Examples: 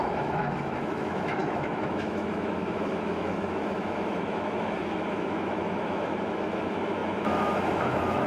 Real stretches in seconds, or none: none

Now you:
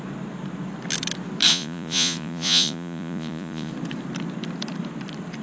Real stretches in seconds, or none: 0.0-1.5; 3.7-5.4

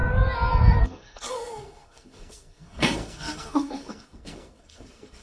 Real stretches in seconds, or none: 0.0-0.8

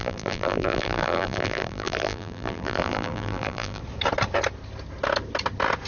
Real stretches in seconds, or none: 3.8-5.9

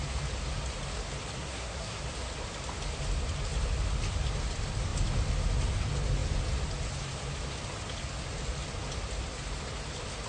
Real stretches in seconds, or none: 0.0-1.4; 2.0-10.3

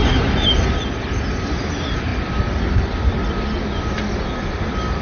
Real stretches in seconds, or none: 0.0-5.0

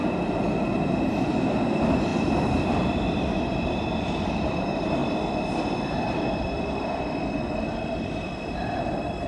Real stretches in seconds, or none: 5.0-7.2

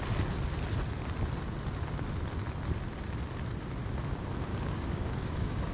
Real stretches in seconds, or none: 0.0-4.5